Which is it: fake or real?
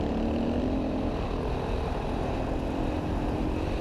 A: real